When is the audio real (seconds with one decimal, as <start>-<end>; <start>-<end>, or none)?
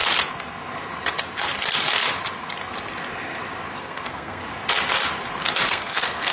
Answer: 0.0-3.8; 4.4-5.7